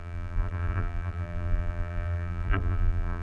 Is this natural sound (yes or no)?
no